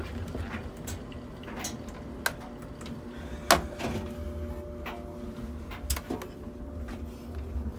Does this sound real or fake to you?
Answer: real